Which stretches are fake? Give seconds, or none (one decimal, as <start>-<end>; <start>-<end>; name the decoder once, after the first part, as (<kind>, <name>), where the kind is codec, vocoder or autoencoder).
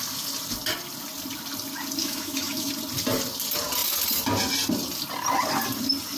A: 2.0-2.7 (autoencoder, DAC-VAE)